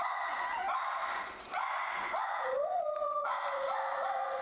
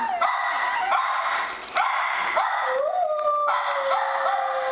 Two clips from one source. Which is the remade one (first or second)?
first